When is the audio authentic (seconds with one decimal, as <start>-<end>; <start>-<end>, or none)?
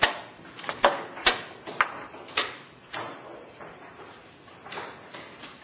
0.0-3.3; 4.1-5.6